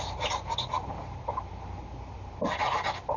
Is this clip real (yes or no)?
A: yes